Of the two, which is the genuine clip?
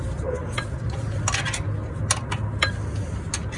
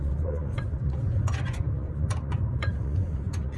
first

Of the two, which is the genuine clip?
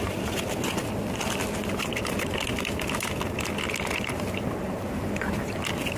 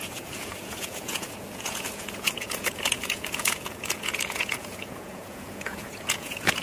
first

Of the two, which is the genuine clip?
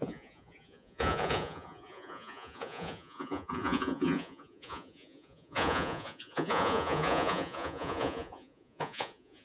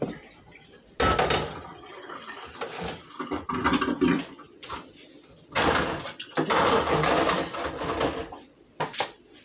second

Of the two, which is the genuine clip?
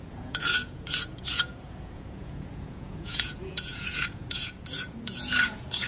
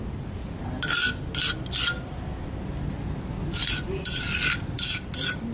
second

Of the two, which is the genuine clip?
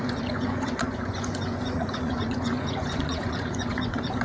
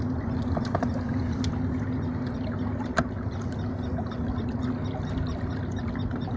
second